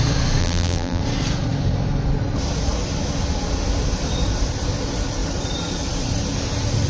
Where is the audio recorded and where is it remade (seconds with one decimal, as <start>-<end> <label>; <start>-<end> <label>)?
0.0-0.4 recorded; 0.4-1.0 remade; 1.0-6.9 recorded